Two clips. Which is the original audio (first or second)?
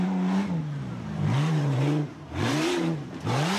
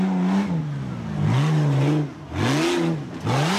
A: second